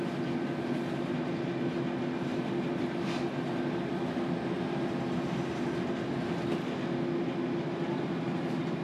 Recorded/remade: recorded